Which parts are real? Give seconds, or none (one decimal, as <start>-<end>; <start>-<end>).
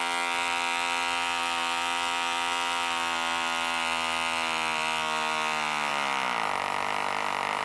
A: 0.0-7.6